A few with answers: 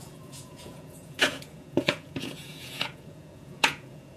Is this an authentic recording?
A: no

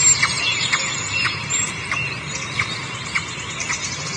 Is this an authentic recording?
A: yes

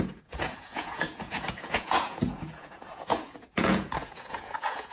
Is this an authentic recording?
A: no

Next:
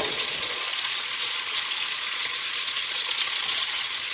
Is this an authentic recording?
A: no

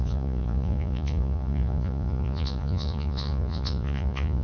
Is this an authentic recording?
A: no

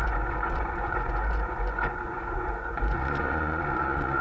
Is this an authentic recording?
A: no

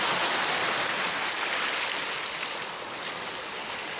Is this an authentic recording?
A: yes